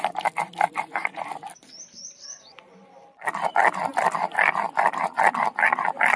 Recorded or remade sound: remade